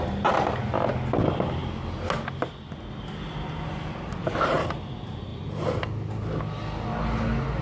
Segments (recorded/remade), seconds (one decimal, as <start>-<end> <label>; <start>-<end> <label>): 0.0-0.6 remade; 0.6-5.3 recorded; 5.3-6.4 remade; 6.4-7.6 recorded

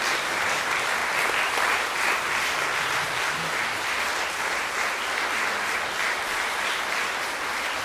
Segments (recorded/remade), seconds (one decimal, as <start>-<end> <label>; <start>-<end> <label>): 0.0-7.8 recorded

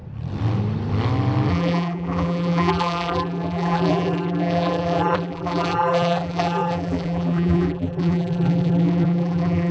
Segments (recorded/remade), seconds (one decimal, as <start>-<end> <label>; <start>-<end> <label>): 0.0-1.5 recorded; 1.5-9.7 remade

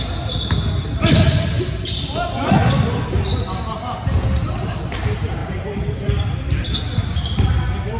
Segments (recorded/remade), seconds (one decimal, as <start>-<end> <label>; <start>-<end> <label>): 0.0-5.4 recorded; 5.4-6.4 remade; 6.4-8.0 recorded

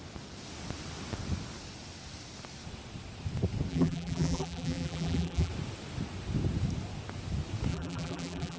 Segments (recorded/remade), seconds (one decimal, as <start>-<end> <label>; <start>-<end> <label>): 0.0-3.7 recorded; 3.7-5.5 remade; 5.5-7.7 recorded; 7.7-8.6 remade

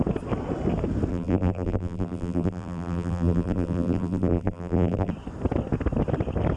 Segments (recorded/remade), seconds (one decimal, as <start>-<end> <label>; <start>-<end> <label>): 0.0-1.1 recorded; 1.1-5.1 remade; 5.1-6.6 recorded

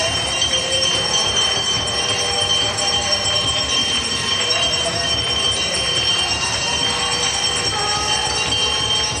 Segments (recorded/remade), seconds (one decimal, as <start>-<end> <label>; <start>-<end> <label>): 0.0-6.3 remade; 6.3-9.2 recorded